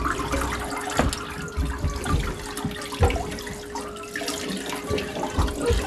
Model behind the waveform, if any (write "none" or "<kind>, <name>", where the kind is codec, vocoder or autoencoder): none